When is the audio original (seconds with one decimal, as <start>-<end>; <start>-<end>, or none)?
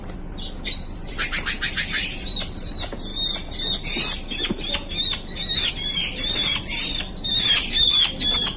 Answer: 3.1-5.7